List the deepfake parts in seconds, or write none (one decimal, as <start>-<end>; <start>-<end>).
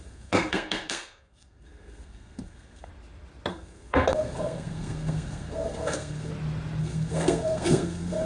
0.0-2.9; 3.5-6.3; 6.8-8.2